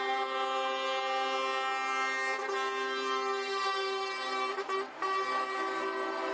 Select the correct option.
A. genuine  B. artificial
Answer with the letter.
A